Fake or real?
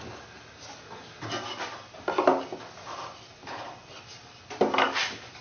real